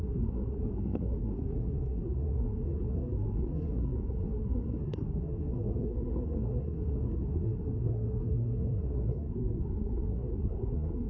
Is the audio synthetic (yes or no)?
yes